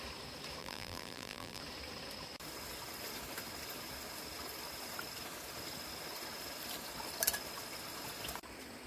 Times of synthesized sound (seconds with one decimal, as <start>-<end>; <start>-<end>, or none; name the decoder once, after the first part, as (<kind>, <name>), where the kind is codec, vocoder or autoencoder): 0.6-1.6 (vocoder, BigVGAN v2)